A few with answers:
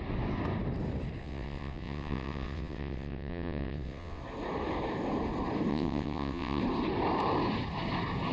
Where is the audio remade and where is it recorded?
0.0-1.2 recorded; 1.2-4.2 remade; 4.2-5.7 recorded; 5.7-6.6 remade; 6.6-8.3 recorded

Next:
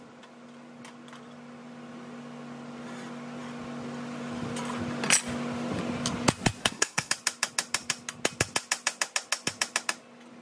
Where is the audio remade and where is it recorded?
0.0-6.6 recorded; 6.6-7.1 remade; 7.1-10.4 recorded

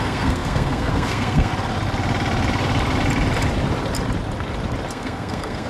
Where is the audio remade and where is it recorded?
0.0-1.5 remade; 1.5-4.9 recorded; 4.9-5.7 remade

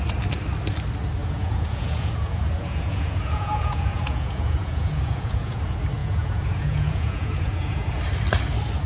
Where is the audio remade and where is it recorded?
0.0-1.2 recorded; 1.2-5.6 remade; 5.6-6.0 recorded; 6.0-8.0 remade; 8.0-8.9 recorded

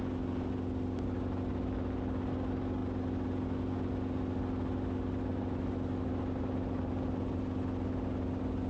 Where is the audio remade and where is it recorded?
0.0-8.7 recorded

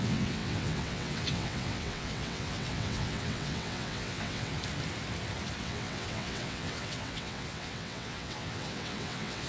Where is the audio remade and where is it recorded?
0.0-4.5 remade; 4.5-5.6 recorded; 5.6-9.5 remade